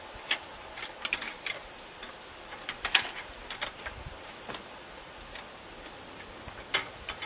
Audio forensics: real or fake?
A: real